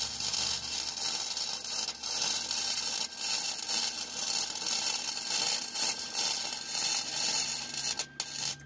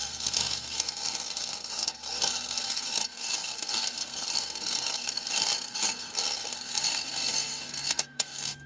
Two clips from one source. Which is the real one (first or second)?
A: first